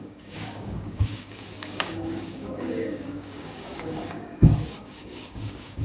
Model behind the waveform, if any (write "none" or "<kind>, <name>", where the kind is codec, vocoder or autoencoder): codec, DAC